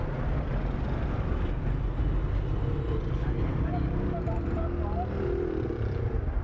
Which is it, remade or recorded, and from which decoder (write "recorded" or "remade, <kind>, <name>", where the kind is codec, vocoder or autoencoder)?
recorded